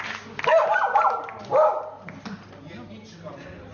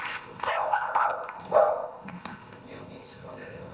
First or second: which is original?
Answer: first